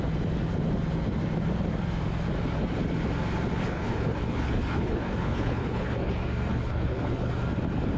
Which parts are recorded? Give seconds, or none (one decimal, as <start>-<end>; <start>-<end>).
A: 0.0-3.6; 6.1-6.5; 7.3-8.0